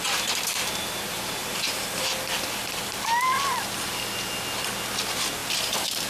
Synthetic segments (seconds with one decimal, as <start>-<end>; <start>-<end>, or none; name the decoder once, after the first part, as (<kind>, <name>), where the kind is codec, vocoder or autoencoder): none